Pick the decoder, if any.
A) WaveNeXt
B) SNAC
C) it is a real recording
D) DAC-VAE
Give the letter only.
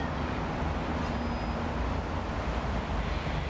C